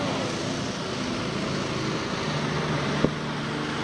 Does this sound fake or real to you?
real